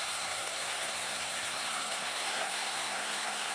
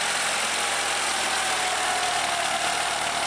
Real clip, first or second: second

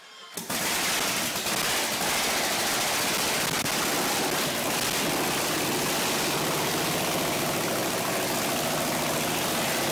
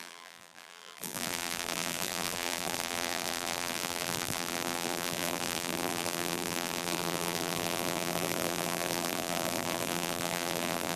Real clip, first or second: first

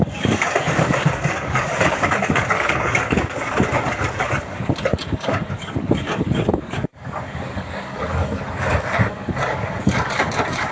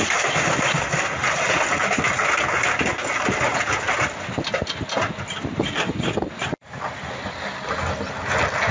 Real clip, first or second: second